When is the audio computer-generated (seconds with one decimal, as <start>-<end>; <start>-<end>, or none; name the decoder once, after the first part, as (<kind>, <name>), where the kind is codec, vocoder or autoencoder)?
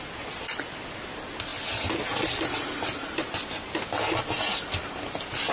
none